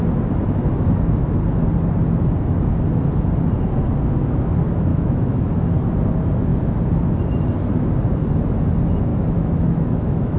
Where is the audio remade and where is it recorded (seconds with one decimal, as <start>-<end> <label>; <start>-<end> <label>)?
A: 0.0-4.9 recorded; 4.9-5.5 remade; 5.5-9.1 recorded; 9.1-10.4 remade